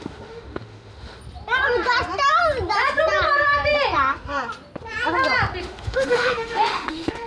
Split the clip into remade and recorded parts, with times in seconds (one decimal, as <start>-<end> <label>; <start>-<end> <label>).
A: 0.0-1.2 remade; 1.2-5.6 recorded; 5.6-7.3 remade